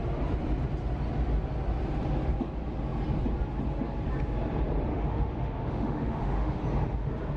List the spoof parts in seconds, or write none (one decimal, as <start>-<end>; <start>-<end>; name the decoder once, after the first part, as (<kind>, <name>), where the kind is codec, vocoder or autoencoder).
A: 4.9-6.6 (autoencoder, DAC-VAE)